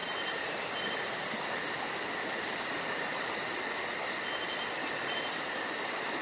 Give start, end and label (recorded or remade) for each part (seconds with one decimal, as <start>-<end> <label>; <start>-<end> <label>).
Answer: 0.0-6.2 recorded